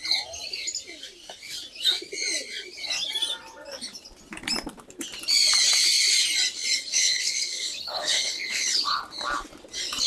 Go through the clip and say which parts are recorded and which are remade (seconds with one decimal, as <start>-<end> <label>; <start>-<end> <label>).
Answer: 0.0-6.9 recorded; 6.9-9.0 remade; 9.0-10.1 recorded